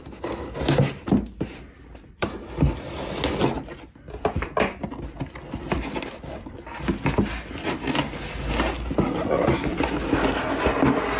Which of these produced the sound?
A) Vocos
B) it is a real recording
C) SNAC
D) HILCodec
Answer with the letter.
B